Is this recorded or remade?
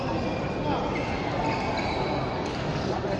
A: recorded